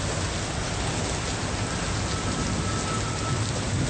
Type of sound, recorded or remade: recorded